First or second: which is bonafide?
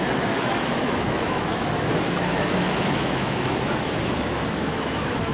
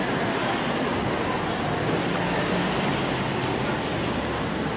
second